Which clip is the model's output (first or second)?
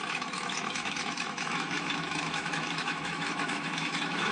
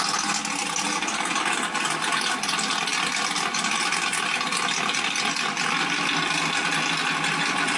first